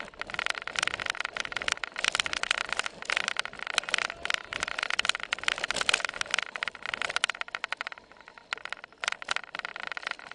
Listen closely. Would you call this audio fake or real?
real